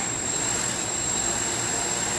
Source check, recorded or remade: recorded